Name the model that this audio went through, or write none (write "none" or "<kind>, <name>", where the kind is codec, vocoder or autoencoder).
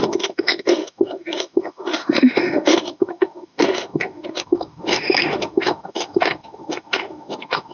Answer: autoencoder, DAC-VAE